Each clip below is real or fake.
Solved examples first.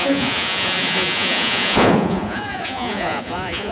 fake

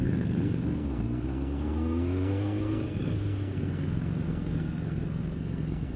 fake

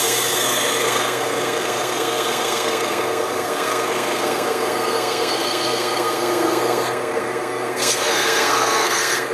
fake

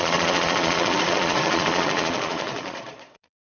fake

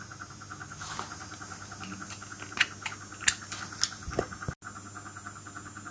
real